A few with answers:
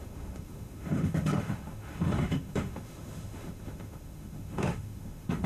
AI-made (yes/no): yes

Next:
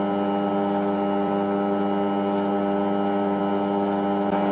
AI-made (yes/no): no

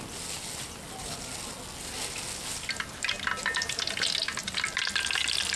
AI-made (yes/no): no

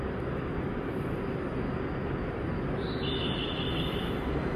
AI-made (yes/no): no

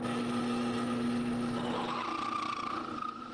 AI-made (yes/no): no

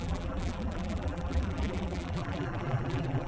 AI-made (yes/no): yes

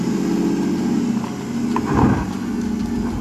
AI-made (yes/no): no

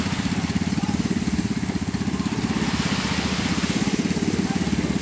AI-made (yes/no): no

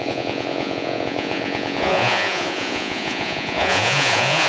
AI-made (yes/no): yes